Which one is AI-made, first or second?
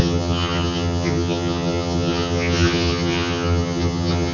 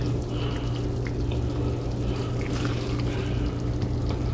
first